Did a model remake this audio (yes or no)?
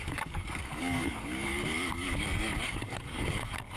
yes